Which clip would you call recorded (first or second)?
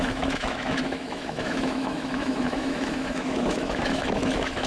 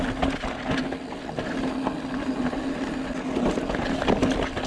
second